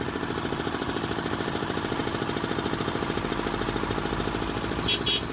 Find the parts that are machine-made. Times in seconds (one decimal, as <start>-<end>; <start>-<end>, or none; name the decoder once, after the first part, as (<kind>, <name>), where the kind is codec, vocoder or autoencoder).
0.0-2.0 (vocoder, BigVGAN v2)